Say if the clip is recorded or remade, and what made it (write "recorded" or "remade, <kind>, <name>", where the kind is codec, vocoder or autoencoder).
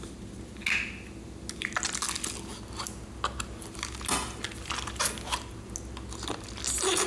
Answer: recorded